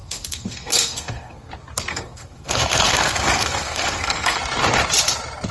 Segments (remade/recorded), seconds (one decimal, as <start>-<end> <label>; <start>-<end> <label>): 0.0-1.5 remade; 1.5-1.9 recorded; 1.9-4.4 remade; 4.4-5.5 recorded